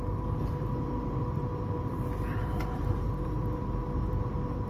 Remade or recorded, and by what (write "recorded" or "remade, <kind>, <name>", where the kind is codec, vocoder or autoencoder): remade, vocoder, BigVGAN v2